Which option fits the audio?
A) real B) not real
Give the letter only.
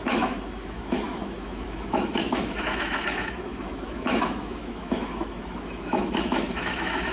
B